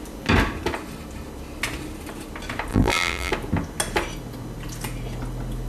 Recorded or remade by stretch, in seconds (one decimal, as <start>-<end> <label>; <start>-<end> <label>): 0.0-2.7 recorded; 2.7-3.3 remade; 3.3-5.7 recorded